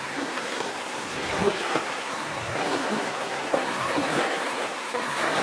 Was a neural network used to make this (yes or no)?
yes